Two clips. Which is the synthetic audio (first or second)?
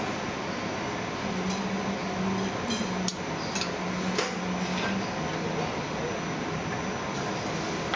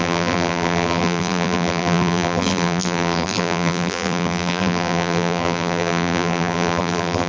second